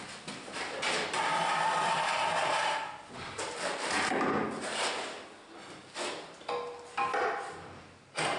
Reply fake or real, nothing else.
real